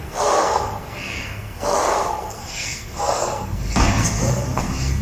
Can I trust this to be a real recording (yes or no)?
no